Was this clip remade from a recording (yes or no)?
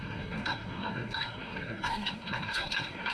yes